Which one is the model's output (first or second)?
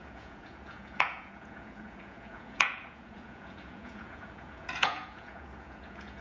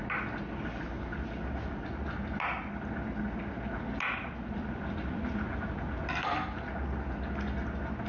first